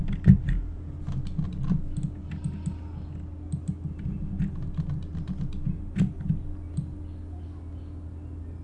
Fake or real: real